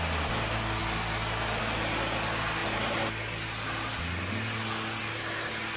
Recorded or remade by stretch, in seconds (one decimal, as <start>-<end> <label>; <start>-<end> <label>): 0.0-5.8 recorded